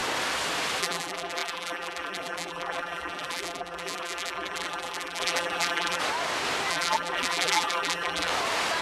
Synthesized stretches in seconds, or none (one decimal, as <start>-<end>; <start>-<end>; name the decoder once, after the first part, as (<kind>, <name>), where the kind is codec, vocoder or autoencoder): 0.8-6.0 (vocoder, BigVGAN v2); 6.7-8.3